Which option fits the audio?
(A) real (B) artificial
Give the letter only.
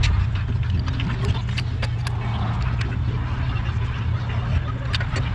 A